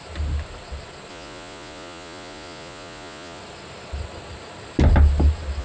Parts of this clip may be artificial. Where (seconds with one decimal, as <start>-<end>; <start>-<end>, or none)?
1.1-3.4